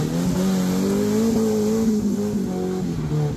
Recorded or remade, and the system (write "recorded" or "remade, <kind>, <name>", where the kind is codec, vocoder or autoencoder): recorded